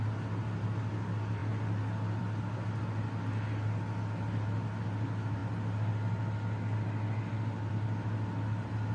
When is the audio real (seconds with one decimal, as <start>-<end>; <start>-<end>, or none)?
0.0-8.9